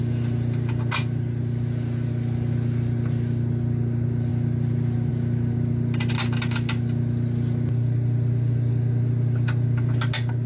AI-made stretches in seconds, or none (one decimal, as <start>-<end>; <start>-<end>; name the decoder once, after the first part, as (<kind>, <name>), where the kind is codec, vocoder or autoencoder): none